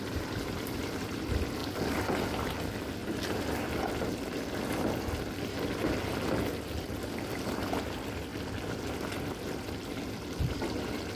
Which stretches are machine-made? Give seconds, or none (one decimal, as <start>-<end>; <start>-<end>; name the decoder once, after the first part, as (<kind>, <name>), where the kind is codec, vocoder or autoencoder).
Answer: 0.0-3.0 (vocoder, BigVGAN v2); 7.0-8.3; 9.2-11.1